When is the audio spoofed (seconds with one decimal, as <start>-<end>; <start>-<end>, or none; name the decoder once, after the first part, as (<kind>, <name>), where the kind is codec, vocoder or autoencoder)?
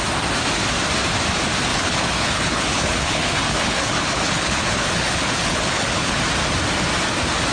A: 1.7-6.2 (codec, HILCodec)